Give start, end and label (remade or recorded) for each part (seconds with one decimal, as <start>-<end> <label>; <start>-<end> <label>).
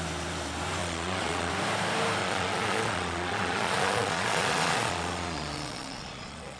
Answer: 0.0-0.8 recorded; 0.8-1.5 remade; 1.5-2.2 recorded; 2.2-6.6 remade